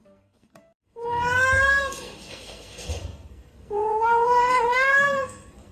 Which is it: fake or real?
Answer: fake